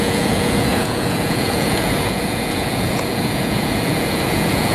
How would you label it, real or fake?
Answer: fake